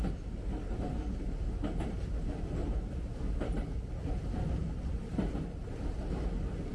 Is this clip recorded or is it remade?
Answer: recorded